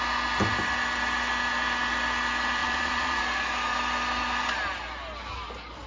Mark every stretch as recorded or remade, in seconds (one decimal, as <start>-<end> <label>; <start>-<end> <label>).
0.0-2.6 recorded; 2.6-3.2 remade; 3.2-5.9 recorded